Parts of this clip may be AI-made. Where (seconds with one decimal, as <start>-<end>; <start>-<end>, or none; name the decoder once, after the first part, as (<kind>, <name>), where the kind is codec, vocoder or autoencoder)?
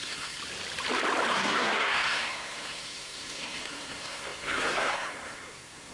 0.0-0.4 (codec, SNAC); 1.3-5.9